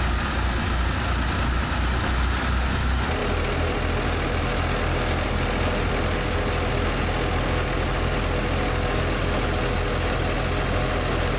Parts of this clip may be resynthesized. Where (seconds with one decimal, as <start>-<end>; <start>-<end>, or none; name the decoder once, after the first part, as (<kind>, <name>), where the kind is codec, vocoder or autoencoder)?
none